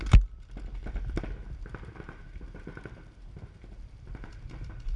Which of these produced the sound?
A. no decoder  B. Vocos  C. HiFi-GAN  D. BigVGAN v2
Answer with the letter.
A